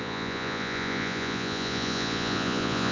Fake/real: fake